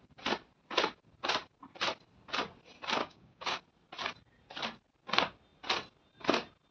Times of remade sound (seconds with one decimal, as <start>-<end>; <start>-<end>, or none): 3.0-3.6